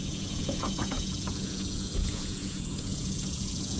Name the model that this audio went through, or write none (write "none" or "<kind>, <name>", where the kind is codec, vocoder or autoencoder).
vocoder, Vocos